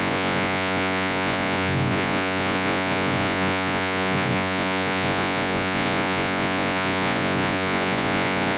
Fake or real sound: fake